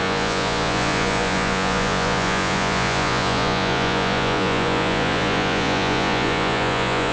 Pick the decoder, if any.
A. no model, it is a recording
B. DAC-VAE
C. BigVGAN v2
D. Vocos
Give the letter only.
D